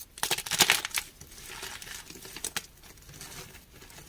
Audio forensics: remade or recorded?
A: recorded